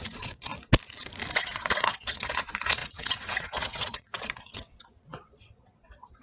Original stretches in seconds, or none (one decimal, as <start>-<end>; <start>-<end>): 0.5-1.3